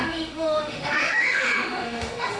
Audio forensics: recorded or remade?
remade